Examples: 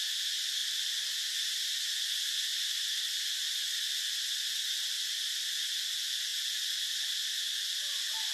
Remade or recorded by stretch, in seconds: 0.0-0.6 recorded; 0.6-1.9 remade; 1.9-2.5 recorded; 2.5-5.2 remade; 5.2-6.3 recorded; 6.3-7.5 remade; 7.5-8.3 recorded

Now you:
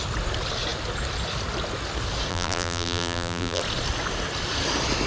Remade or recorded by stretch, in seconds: 0.0-2.3 recorded; 2.3-3.6 remade; 3.6-5.1 recorded

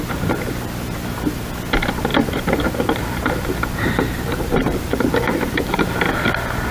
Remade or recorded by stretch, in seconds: 0.0-2.1 recorded; 2.1-6.1 remade; 6.1-6.7 recorded

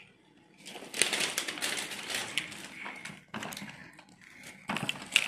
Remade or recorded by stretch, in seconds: 0.0-2.2 recorded; 2.2-3.1 remade; 3.1-5.3 recorded

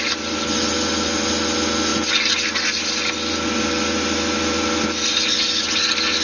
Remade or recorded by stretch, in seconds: 0.0-6.2 recorded

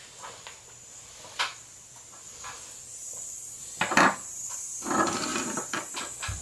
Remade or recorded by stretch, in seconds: 0.0-3.6 recorded; 3.6-4.4 remade; 4.4-5.3 recorded; 5.3-5.9 remade; 5.9-6.4 recorded